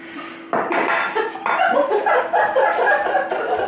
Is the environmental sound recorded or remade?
recorded